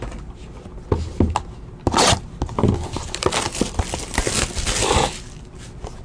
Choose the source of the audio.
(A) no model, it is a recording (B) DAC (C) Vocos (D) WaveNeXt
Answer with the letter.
A